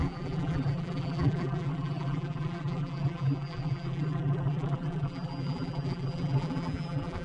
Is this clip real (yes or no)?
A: no